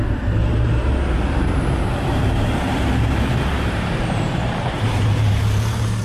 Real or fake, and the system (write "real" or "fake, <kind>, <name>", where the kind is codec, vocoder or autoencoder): fake, vocoder, BigVGAN v2